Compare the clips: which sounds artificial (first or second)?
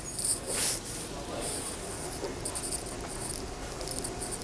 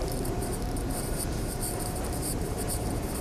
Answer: second